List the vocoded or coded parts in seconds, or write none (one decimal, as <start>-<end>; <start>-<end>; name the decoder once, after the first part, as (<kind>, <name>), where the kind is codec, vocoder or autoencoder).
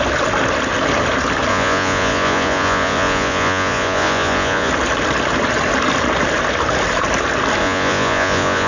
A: 1.5-4.7 (vocoder, Vocos); 7.6-8.7